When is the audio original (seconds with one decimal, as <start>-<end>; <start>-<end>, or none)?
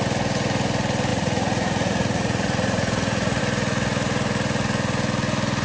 0.0-1.1; 3.4-5.6